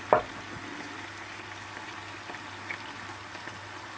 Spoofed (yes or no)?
no